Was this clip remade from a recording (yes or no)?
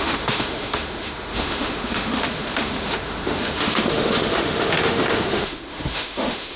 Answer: yes